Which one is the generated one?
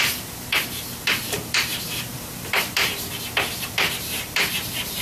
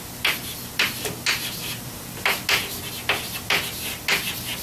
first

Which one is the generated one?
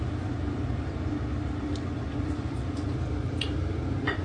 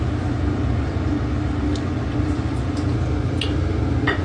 first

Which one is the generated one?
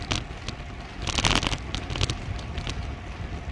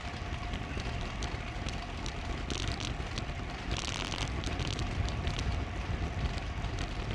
second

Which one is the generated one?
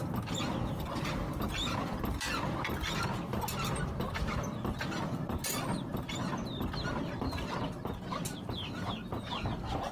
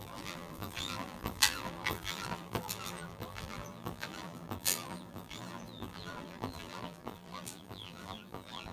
second